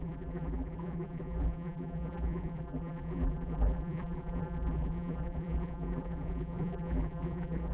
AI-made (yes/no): yes